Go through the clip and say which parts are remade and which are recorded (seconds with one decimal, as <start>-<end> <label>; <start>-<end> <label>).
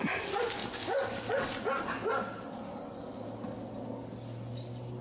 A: 0.0-5.0 recorded